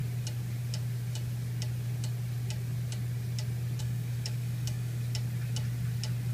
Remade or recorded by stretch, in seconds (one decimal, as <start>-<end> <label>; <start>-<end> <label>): 0.0-3.8 recorded; 3.8-5.0 remade; 5.0-6.3 recorded